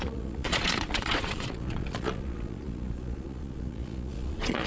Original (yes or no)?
no